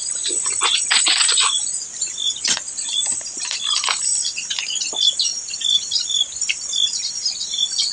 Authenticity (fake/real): fake